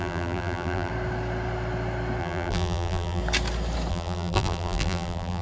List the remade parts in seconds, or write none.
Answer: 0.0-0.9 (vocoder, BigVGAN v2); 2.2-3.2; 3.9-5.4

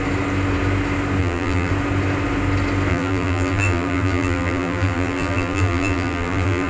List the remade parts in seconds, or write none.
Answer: 1.2-1.7 (vocoder, BigVGAN v2); 2.9-6.7

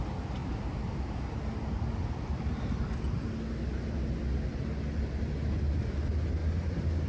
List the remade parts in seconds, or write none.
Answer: 0.4-1.0 (vocoder, BigVGAN v2); 6.4-7.1

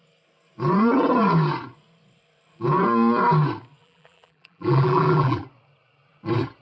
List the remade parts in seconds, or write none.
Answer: 3.8-5.4 (vocoder, BigVGAN v2)

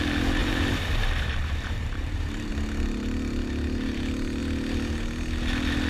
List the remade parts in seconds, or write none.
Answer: 0.4-2.5 (vocoder, BigVGAN v2)

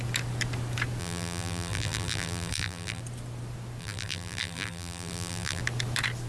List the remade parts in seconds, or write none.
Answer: 1.0-3.0 (vocoder, BigVGAN v2); 3.8-5.6

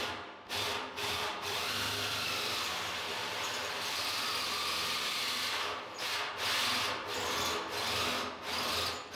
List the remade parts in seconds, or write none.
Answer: 1.3-6.3 (vocoder, BigVGAN v2)